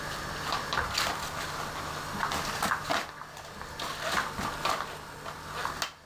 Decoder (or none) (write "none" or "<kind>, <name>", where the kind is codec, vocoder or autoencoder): none